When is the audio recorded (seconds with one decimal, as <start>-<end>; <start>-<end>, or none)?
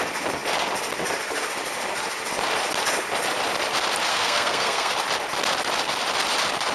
0.0-4.1; 4.9-6.7